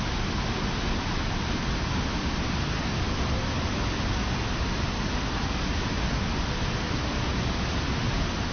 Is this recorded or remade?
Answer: recorded